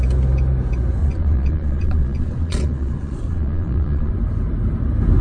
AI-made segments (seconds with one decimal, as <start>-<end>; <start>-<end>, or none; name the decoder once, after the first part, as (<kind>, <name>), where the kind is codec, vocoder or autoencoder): 1.0-4.1 (vocoder, Vocos)